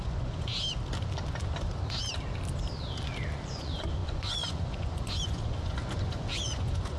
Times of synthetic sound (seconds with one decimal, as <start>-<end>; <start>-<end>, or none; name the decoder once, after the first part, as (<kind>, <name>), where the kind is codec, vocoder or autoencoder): 0.0-0.5 (vocoder, Vocos); 3.5-7.0